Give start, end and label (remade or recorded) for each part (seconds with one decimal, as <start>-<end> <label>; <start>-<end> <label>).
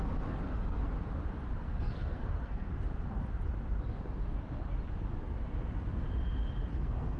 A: 0.0-0.9 remade; 0.9-1.6 recorded; 1.6-2.7 remade; 2.7-6.7 recorded; 6.7-7.2 remade